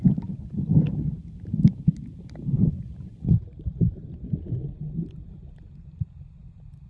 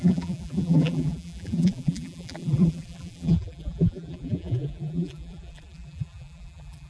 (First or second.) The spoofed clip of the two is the second